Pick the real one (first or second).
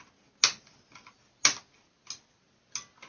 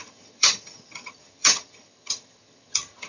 first